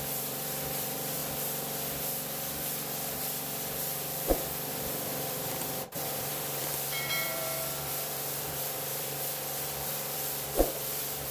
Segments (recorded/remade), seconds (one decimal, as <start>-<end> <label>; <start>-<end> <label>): 0.0-1.2 remade; 1.2-4.7 recorded; 4.7-11.3 remade